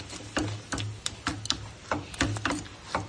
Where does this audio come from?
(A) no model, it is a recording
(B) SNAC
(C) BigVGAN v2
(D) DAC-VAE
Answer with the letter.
A